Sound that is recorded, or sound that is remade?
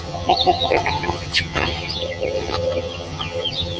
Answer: remade